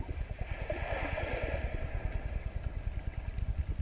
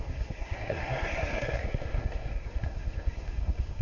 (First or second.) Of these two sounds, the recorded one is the first